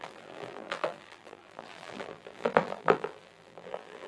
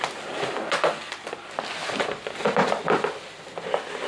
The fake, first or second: first